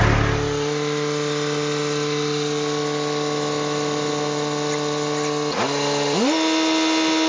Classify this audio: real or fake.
real